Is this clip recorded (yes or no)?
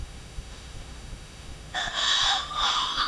no